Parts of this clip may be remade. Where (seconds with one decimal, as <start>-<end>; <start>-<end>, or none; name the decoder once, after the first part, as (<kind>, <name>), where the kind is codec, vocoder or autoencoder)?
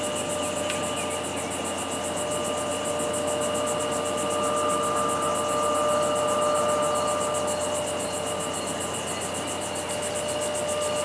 none